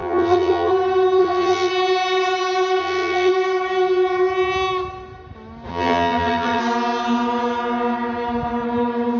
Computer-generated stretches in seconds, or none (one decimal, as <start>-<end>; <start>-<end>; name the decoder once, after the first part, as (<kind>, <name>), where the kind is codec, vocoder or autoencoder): 0.0-0.7 (vocoder, BigVGAN v2); 1.2-1.7; 2.8-3.3; 5.7-6.6